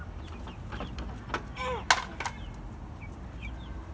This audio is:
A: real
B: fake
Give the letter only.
A